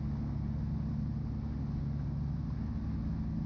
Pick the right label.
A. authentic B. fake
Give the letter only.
A